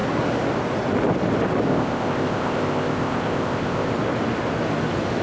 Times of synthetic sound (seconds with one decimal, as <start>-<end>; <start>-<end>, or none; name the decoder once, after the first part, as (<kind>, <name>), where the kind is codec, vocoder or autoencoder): 1.7-3.9 (codec, ZipCodec)